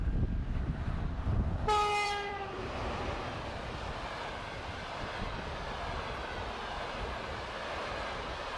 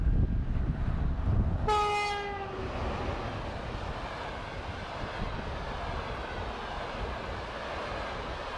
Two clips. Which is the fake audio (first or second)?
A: first